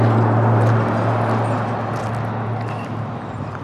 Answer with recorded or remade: recorded